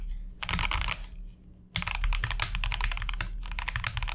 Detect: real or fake real